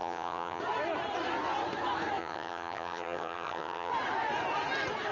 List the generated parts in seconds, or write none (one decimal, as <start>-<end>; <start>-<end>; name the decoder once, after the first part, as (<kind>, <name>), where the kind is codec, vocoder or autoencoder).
0.0-0.6 (vocoder, HiFi-GAN); 2.2-3.9